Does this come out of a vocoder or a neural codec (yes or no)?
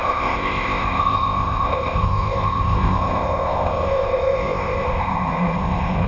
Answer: yes